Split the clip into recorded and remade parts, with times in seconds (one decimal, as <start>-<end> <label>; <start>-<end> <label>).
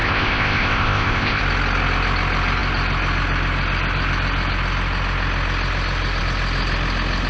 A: 0.0-1.4 remade; 1.4-7.3 recorded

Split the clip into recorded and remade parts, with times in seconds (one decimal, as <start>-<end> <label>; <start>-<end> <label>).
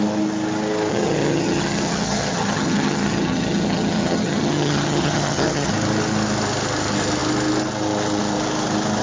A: 0.0-0.9 recorded; 0.9-5.7 remade; 5.7-9.0 recorded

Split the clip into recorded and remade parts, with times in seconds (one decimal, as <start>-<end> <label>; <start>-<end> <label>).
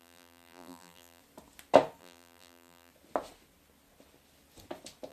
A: 0.0-1.2 remade; 1.2-2.0 recorded; 2.0-2.9 remade; 2.9-5.1 recorded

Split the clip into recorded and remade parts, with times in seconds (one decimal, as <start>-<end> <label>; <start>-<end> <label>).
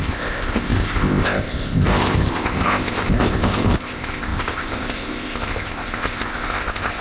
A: 0.0-7.0 remade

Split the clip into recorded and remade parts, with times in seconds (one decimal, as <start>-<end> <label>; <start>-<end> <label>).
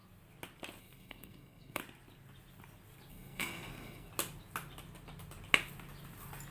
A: 0.0-0.8 recorded; 0.8-1.8 remade; 1.8-3.1 recorded; 3.1-4.1 remade; 4.1-6.5 recorded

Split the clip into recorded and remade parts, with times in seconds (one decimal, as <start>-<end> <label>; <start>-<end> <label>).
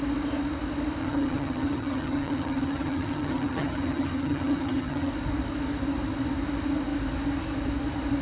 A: 0.0-1.0 recorded; 1.0-5.1 remade; 5.1-8.2 recorded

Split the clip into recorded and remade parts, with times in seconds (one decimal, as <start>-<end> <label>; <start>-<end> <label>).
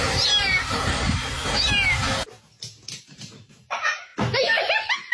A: 0.0-1.4 remade; 1.4-3.0 recorded; 3.0-4.1 remade; 4.1-4.6 recorded; 4.6-5.1 remade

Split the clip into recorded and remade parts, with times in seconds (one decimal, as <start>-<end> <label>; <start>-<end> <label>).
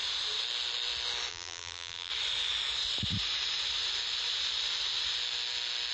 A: 0.0-1.3 recorded; 1.3-2.1 remade; 2.1-5.9 recorded